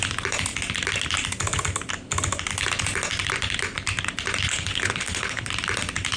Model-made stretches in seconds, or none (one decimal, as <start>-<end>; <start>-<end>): 4.5-5.5